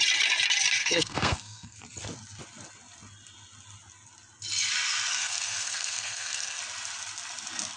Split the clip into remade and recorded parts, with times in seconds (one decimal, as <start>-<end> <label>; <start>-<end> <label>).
0.0-0.8 recorded; 0.8-1.8 remade; 1.8-5.1 recorded; 5.1-6.6 remade; 6.6-7.8 recorded